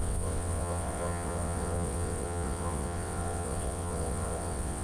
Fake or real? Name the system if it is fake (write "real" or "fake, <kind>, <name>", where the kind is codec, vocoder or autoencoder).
fake, vocoder, WaveNeXt